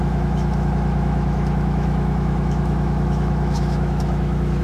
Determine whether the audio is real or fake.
fake